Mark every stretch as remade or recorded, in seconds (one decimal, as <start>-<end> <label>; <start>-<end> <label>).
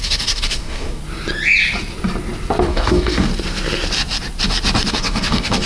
0.0-1.0 remade; 1.0-2.6 recorded; 2.6-3.3 remade; 3.3-4.9 recorded; 4.9-5.7 remade